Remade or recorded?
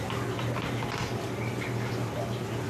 recorded